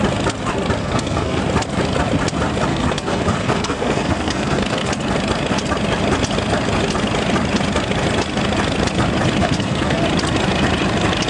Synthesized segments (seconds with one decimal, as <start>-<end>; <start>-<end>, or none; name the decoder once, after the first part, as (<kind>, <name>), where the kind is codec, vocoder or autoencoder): 0.8-1.4 (codec, SNAC); 2.7-4.9; 9.4-10.0